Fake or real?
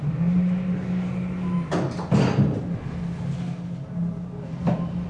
real